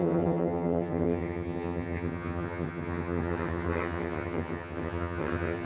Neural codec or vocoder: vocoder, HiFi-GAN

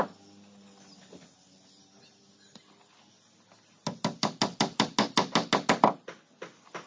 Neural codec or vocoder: none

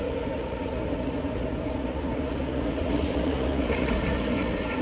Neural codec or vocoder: vocoder, Vocos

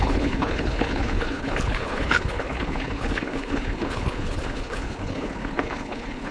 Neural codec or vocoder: codec, HILCodec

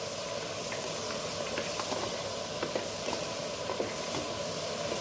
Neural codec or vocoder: none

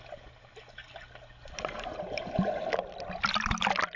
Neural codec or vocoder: none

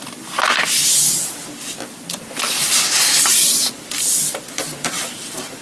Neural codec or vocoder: none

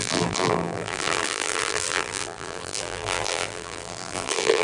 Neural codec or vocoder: vocoder, BigVGAN v2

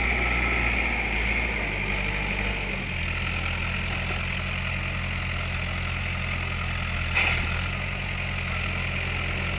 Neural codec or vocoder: none